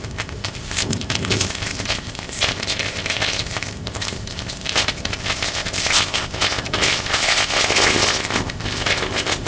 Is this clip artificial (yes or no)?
yes